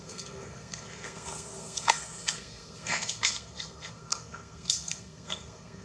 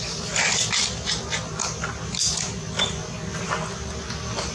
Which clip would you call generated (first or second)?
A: first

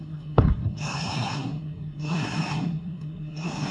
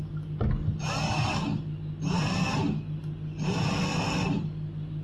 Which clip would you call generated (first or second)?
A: first